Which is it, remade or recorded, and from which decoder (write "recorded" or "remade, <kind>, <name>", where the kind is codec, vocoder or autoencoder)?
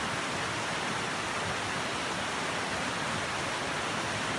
recorded